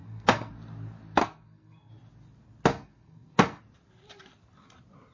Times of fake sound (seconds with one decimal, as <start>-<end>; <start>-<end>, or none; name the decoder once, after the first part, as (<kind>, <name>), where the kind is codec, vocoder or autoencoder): 0.0-0.5 (codec, SNAC); 1.2-1.9; 2.7-3.6